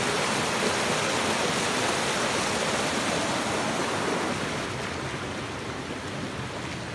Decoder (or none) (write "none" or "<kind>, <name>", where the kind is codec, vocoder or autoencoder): none